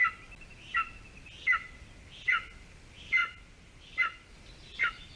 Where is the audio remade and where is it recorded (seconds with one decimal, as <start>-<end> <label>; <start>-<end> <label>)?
0.0-5.2 recorded